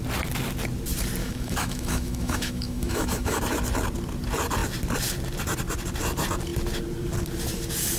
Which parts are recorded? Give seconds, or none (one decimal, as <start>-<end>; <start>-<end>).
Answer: 0.0-1.2; 3.4-8.0